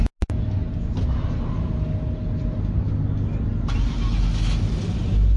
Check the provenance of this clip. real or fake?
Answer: real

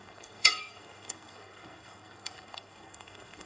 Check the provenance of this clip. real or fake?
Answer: fake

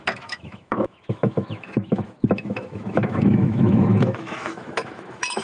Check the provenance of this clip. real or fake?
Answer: fake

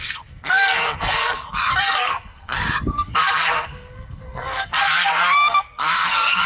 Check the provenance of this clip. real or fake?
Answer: fake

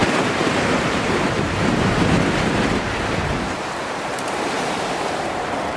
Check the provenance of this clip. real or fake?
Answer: fake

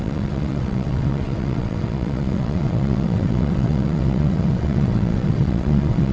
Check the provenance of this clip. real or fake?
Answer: fake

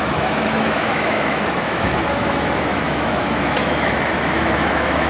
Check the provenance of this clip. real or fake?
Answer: fake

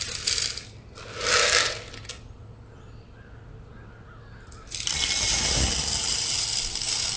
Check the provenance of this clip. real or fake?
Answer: real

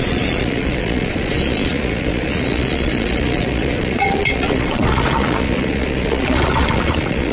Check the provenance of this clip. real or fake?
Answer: fake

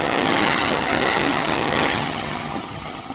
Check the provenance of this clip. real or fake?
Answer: fake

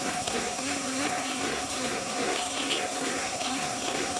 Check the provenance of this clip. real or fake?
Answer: fake